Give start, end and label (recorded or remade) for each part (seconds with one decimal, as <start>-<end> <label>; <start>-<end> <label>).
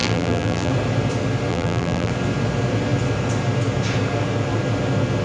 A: 0.0-0.7 remade; 0.7-1.5 recorded; 1.5-2.1 remade; 2.1-5.2 recorded